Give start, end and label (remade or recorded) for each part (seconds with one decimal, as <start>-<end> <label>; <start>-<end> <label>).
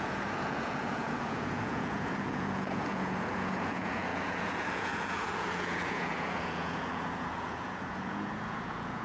0.0-9.0 remade